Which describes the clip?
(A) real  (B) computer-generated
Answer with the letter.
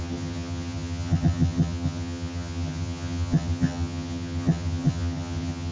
B